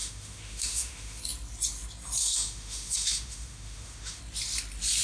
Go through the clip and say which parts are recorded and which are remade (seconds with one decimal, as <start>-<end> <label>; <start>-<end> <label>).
0.0-1.2 remade; 1.2-2.2 recorded; 2.2-4.2 remade; 4.2-5.0 recorded